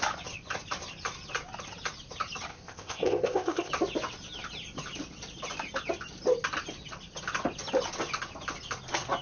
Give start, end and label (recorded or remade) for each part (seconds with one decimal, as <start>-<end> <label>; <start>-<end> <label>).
0.0-2.5 recorded; 2.5-3.7 remade; 3.7-9.2 recorded